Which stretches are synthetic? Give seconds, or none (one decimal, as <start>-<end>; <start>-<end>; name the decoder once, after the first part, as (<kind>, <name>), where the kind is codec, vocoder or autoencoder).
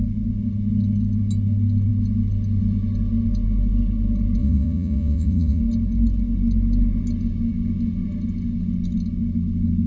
4.4-5.6 (vocoder, Vocos)